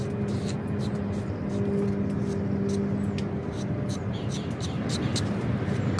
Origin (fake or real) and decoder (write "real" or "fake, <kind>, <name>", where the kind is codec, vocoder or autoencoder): real